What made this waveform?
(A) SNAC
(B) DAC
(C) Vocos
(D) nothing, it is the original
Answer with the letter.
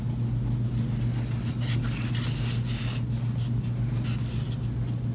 D